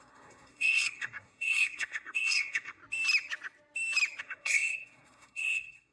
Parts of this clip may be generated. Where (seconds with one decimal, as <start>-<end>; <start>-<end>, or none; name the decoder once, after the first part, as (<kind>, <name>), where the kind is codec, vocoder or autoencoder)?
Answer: 0.0-2.8 (codec, SNAC); 4.2-5.9